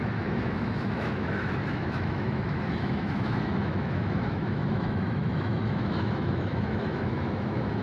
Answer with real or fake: fake